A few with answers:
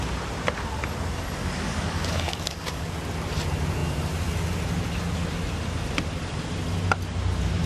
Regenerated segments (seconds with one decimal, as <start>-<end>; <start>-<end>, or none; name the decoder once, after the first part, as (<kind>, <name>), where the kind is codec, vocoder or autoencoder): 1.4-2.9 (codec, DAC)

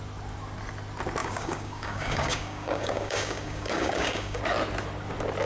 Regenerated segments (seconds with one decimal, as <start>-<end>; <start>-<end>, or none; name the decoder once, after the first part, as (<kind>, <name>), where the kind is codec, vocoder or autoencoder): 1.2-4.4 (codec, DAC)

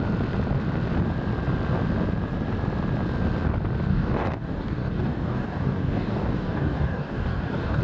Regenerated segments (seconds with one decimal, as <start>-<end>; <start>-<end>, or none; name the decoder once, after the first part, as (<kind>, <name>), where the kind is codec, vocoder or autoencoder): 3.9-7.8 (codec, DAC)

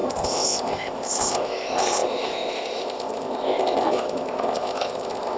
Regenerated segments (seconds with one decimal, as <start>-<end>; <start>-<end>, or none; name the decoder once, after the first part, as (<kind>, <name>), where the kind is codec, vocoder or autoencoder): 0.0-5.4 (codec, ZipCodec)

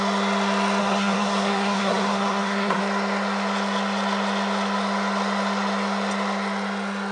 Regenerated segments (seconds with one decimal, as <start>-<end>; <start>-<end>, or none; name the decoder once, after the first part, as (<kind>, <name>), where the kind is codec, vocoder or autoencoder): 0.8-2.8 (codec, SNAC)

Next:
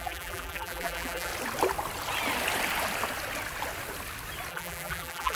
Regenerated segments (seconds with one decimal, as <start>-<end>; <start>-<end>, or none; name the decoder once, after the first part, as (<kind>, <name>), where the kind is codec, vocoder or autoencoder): 0.0-1.3 (vocoder, BigVGAN v2); 4.5-5.4

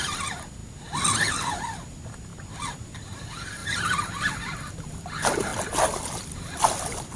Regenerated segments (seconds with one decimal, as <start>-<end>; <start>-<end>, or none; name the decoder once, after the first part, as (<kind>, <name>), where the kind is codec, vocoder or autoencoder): none